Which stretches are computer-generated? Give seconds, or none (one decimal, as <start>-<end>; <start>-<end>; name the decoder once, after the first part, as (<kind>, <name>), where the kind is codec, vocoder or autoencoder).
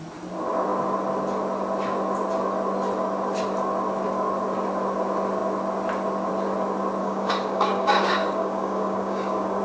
7.0-9.6 (codec, DAC)